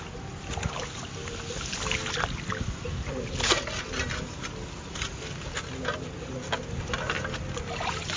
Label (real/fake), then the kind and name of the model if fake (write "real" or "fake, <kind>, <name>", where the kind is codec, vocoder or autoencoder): real